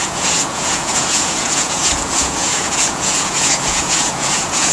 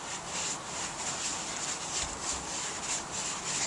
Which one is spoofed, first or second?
first